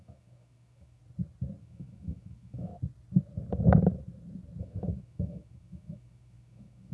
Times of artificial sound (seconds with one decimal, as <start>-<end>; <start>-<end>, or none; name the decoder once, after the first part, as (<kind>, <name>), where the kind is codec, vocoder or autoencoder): 0.0-1.0 (autoencoder, DAC-VAE); 1.6-2.7; 4.6-6.9